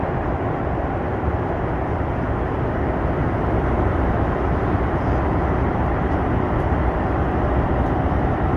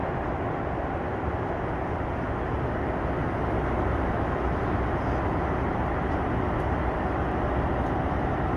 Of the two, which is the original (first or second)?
second